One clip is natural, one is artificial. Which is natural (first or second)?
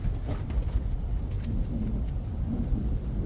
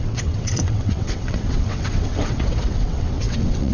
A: first